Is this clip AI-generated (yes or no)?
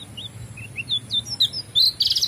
no